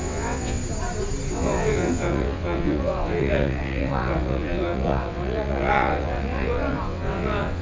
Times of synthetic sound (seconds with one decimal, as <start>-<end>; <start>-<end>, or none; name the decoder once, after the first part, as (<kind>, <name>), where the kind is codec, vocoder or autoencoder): 0.0-0.6 (vocoder, WaveNeXt); 1.3-7.6